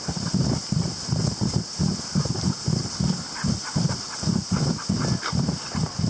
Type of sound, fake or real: real